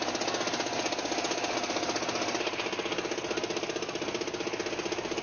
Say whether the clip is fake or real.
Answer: real